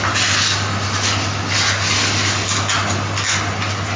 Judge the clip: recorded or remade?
recorded